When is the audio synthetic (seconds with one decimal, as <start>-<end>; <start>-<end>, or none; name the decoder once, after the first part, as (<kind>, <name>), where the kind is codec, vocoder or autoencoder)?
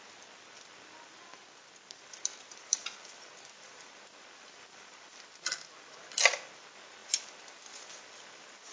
none